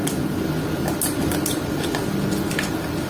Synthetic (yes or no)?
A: no